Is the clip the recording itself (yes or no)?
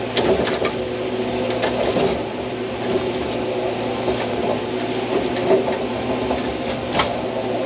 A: yes